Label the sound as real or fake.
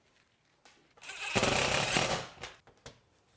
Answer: real